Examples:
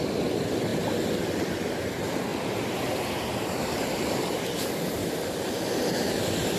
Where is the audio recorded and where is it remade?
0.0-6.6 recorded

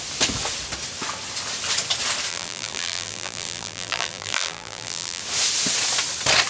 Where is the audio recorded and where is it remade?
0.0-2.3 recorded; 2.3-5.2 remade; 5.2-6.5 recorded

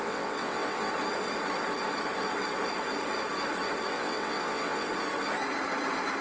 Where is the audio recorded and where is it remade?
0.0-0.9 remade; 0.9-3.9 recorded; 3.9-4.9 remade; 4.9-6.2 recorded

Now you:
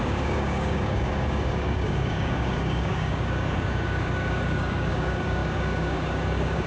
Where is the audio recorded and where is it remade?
0.0-6.7 remade

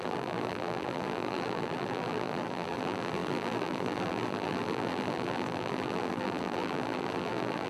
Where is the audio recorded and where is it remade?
0.0-7.7 remade